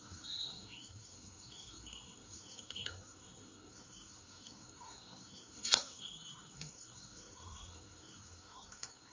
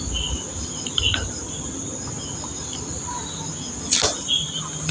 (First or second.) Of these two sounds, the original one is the second